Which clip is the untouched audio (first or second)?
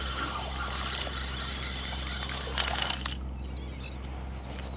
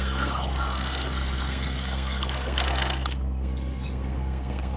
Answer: first